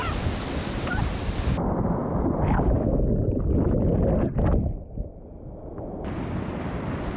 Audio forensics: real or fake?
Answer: real